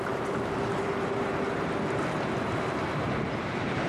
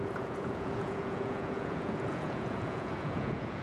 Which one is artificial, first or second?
second